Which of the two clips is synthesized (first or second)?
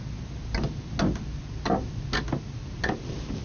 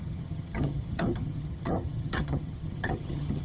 second